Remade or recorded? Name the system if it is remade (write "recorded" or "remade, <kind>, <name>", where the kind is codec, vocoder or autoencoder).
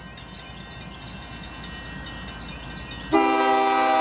recorded